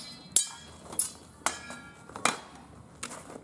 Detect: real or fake real